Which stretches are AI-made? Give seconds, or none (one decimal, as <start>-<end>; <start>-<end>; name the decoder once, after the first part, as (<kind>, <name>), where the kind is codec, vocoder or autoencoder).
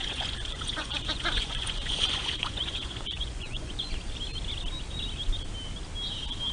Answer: 0.0-3.9 (vocoder, Vocos)